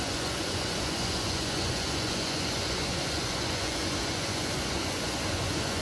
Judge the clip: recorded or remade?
remade